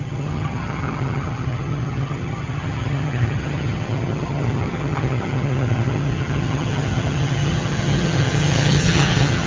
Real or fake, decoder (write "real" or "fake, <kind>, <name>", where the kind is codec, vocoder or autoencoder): fake, vocoder, HiFi-GAN